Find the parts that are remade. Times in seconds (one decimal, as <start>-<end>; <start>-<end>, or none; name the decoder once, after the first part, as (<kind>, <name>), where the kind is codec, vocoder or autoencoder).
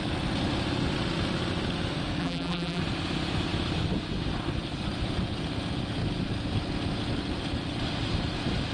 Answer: 2.2-2.8 (vocoder, BigVGAN v2)